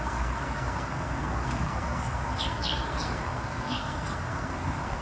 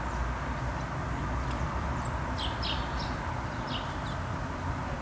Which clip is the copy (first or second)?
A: first